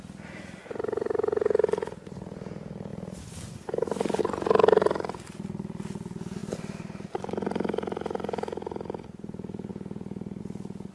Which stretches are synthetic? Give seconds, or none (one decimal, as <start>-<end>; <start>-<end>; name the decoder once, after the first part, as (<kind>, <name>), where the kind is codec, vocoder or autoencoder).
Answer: none